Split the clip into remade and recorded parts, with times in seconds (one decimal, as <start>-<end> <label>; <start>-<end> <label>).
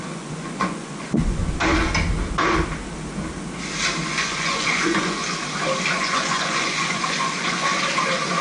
0.0-1.4 remade; 1.4-4.1 recorded; 4.1-5.2 remade; 5.2-5.9 recorded; 5.9-7.7 remade; 7.7-8.4 recorded